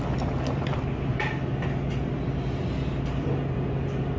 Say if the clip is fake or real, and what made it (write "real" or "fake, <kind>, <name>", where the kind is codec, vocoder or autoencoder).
real